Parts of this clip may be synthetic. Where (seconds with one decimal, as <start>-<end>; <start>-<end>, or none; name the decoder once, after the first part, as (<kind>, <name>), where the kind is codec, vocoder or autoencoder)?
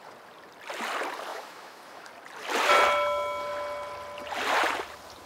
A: 1.3-2.1 (autoencoder, DAC-VAE)